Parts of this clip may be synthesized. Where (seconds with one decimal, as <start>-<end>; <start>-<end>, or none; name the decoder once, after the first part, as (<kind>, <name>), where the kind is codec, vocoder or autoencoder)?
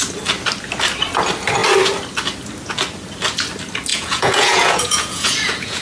3.9-5.8 (vocoder, Vocos)